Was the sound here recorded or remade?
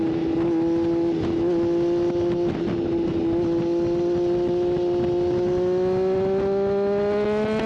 recorded